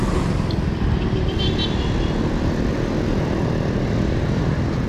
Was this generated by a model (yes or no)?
no